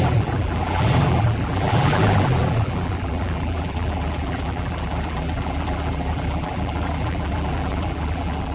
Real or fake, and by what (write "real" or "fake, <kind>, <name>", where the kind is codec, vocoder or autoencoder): fake, vocoder, BigVGAN v2